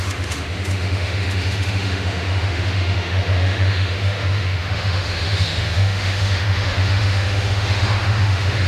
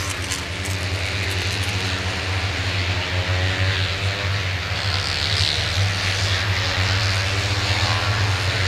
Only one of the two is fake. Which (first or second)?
first